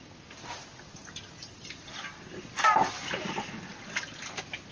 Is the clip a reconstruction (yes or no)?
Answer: no